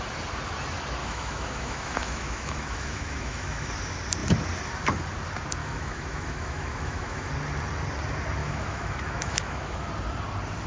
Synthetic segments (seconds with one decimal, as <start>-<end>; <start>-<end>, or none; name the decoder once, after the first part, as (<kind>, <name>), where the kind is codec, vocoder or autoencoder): 1.0-3.7 (autoencoder, DAC-VAE); 5.6-7.3; 8.4-9.9